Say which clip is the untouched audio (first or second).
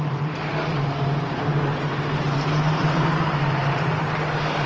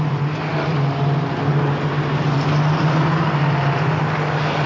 second